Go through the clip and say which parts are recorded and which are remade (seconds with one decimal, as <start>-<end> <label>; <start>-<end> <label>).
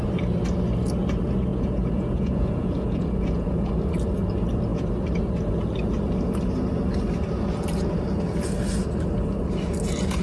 0.0-1.5 recorded; 1.5-3.7 remade; 3.7-10.2 recorded